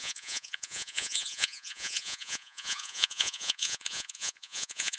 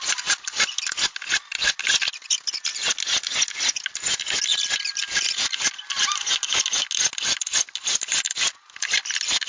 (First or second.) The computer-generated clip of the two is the first